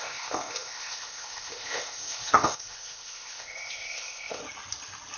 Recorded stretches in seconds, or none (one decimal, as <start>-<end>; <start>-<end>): 4.4-5.2

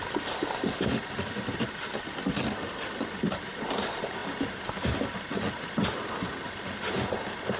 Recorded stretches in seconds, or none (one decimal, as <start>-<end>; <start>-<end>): 0.0-7.6